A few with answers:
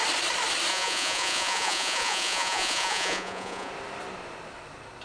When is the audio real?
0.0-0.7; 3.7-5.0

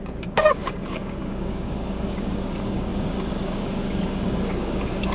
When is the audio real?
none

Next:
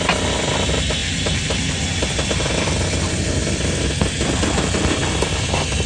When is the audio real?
0.0-5.0

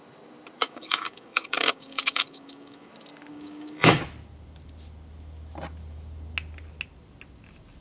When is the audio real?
0.0-0.6; 2.9-3.3; 4.0-7.8

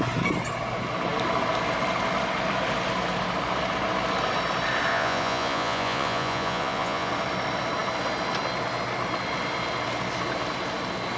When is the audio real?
0.0-4.9; 7.1-11.2

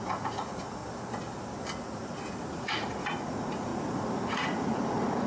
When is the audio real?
0.8-2.5

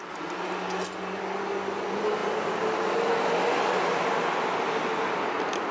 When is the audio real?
0.0-5.7